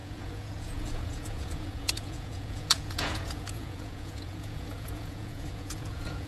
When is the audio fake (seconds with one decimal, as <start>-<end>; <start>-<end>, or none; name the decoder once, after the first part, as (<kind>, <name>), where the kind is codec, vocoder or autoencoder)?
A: 0.0-6.3 (vocoder, Vocos)